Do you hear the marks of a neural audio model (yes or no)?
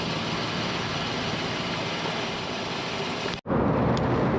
no